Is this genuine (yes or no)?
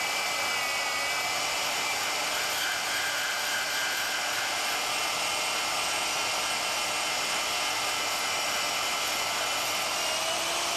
yes